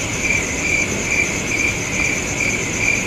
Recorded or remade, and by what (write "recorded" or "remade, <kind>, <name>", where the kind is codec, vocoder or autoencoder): recorded